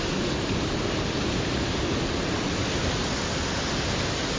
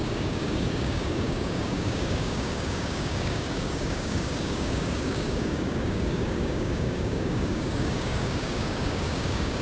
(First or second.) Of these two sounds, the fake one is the second